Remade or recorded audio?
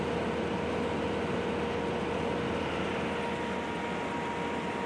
recorded